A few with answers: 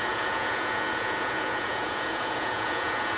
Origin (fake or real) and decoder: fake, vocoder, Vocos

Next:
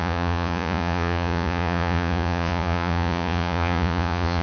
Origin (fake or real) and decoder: fake, vocoder, Vocos